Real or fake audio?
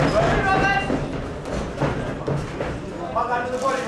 real